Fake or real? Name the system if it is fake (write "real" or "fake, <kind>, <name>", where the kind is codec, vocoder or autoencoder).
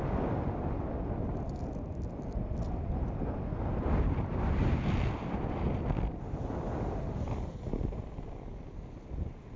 real